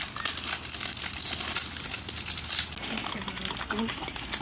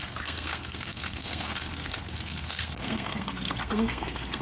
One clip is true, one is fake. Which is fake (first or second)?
second